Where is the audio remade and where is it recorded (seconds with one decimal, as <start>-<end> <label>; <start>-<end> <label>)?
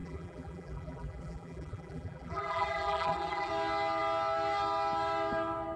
0.0-3.5 remade; 3.5-5.8 recorded